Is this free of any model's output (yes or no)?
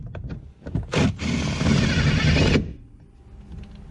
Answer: yes